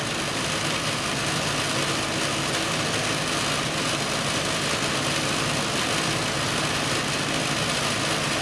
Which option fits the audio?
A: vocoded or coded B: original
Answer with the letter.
B